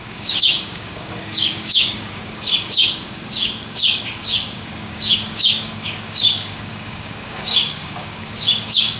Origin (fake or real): fake